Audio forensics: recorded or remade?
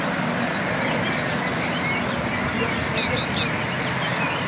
recorded